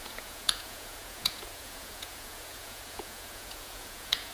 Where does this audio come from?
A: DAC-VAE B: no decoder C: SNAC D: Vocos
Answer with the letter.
D